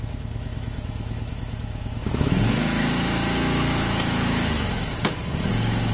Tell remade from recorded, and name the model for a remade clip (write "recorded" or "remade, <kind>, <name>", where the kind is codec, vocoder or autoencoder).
remade, autoencoder, DAC-VAE